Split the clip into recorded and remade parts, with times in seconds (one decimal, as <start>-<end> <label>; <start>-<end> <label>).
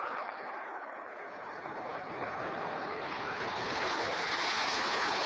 0.0-5.3 remade